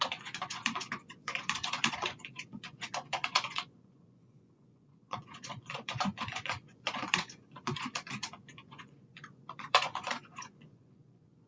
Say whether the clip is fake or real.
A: fake